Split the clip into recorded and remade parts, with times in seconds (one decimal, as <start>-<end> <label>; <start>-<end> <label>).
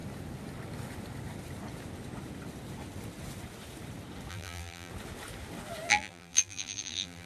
0.0-4.3 recorded; 4.3-4.9 remade; 4.9-5.9 recorded; 5.9-7.2 remade